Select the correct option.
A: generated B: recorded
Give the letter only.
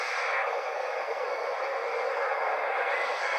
A